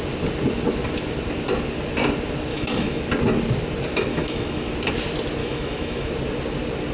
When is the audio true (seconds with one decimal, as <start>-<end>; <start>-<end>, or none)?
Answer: 0.0-2.5; 3.0-4.1; 4.7-5.4; 6.1-6.9